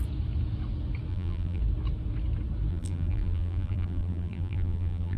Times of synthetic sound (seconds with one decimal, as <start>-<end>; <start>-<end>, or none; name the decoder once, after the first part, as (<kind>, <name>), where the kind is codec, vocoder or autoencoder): 1.1-1.6 (vocoder, BigVGAN v2); 2.7-5.2